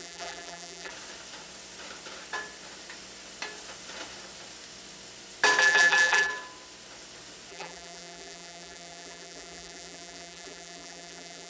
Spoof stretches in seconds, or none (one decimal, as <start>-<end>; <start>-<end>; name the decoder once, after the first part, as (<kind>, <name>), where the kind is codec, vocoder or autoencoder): 0.0-0.9 (vocoder, BigVGAN v2); 5.6-6.3; 7.5-11.5